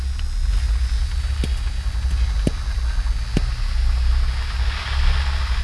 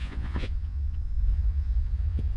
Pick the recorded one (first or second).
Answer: first